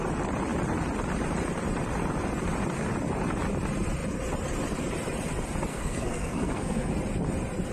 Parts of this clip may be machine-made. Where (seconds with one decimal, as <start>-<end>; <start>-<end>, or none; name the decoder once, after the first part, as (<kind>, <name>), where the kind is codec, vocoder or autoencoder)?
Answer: 5.7-6.9 (codec, SNAC)